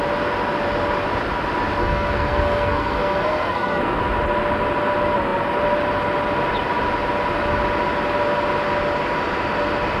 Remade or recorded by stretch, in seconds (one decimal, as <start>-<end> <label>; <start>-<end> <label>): 0.0-1.8 recorded; 1.8-4.0 remade; 4.0-10.0 recorded